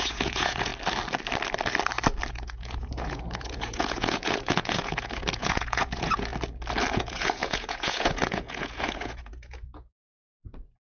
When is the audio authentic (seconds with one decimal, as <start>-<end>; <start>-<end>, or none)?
0.7-2.3; 6.3-6.9